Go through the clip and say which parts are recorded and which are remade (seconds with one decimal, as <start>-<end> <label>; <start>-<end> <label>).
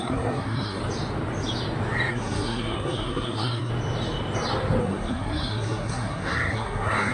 0.0-0.8 remade; 0.8-2.1 recorded; 2.1-3.7 remade; 3.7-4.8 recorded; 4.8-7.1 remade